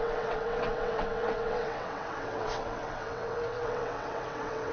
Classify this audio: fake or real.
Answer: fake